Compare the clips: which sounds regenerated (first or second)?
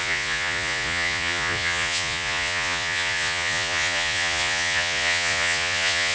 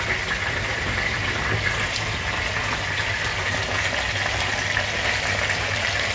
first